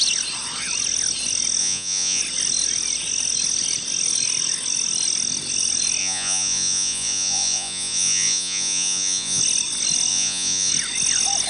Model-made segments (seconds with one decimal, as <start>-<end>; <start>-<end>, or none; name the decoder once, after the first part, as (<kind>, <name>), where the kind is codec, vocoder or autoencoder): 1.6-2.2 (vocoder, Vocos); 6.0-9.4; 10.1-10.7